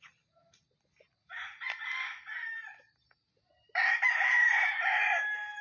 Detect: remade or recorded recorded